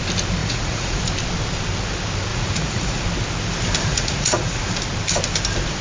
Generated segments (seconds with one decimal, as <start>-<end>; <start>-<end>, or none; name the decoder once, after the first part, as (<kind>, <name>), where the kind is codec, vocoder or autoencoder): 0.4-1.1 (vocoder, Vocos); 2.3-3.0; 3.9-4.8